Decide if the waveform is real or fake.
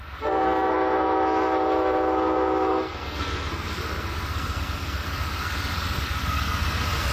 fake